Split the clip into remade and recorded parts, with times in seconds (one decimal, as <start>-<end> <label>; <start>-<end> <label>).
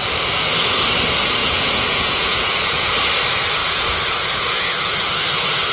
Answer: 0.0-1.4 recorded; 1.4-2.9 remade; 2.9-3.6 recorded; 3.6-4.7 remade; 4.7-5.7 recorded